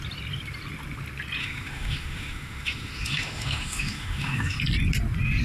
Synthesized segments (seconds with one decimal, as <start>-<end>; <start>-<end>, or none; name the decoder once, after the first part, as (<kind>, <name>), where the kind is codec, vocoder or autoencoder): 1.4-4.6 (autoencoder, DAC-VAE)